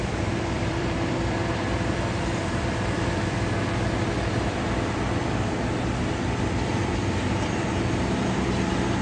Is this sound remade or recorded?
remade